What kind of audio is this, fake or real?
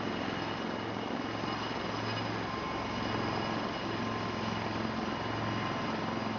real